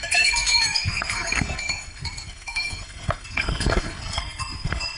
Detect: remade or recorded remade